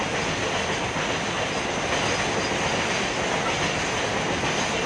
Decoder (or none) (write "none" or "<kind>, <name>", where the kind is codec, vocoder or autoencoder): none